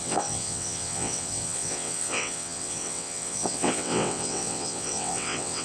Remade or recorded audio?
remade